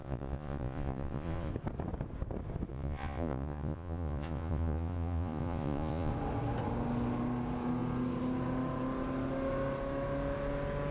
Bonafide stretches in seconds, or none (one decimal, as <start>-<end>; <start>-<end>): 1.5-2.7; 6.1-10.9